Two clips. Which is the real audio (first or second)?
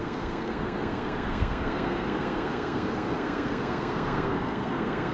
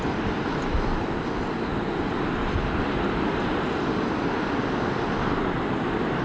second